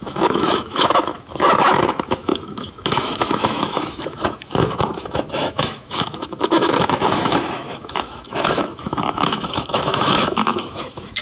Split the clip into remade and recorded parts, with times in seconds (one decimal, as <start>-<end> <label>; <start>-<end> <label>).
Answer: 0.0-11.2 remade